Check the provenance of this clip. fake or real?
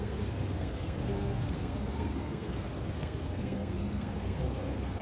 fake